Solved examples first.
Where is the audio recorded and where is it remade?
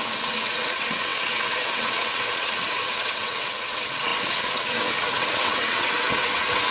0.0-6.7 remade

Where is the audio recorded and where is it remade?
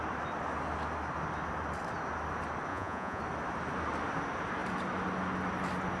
0.0-2.7 recorded; 2.7-3.2 remade; 3.2-6.0 recorded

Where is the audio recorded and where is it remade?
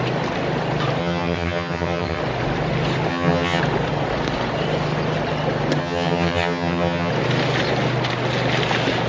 0.0-1.0 recorded; 1.0-2.2 remade; 2.2-3.1 recorded; 3.1-3.6 remade; 3.6-5.8 recorded; 5.8-7.1 remade; 7.1-9.1 recorded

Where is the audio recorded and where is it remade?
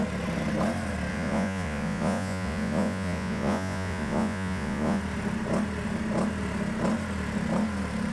0.0-1.1 recorded; 1.1-5.0 remade; 5.0-8.1 recorded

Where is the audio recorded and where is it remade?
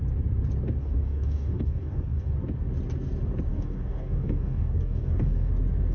0.0-0.8 recorded; 0.8-2.3 remade; 2.3-3.5 recorded; 3.5-5.5 remade; 5.5-5.9 recorded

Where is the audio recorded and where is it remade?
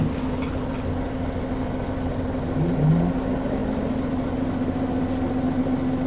0.0-6.1 recorded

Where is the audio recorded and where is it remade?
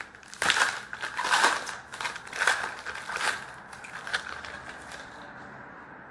0.0-6.1 recorded